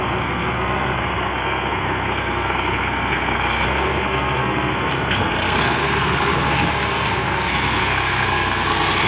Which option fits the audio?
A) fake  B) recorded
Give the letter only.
A